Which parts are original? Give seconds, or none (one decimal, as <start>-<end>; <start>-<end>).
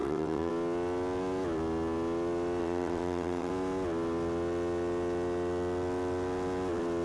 0.5-2.6; 3.5-7.0